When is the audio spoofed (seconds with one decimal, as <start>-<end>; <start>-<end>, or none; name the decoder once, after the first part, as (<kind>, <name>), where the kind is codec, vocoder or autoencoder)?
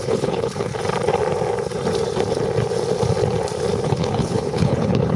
0.0-0.7 (codec, HILCodec); 3.8-5.2